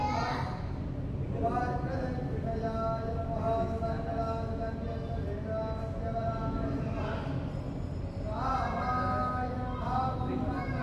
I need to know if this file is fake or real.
real